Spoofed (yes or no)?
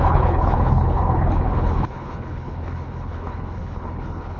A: yes